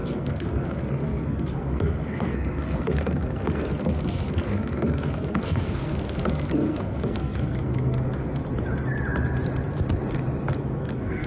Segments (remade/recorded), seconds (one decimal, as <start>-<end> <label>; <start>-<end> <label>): 0.0-8.4 remade; 8.4-10.8 recorded; 10.8-11.3 remade